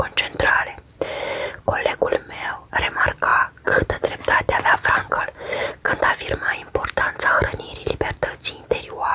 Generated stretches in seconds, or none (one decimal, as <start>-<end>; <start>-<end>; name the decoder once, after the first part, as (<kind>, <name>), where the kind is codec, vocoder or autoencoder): none